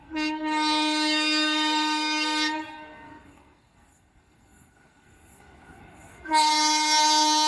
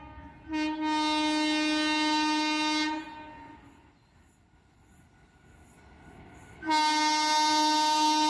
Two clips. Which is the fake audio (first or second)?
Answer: first